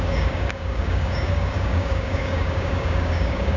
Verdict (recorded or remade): remade